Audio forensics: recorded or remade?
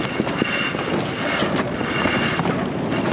recorded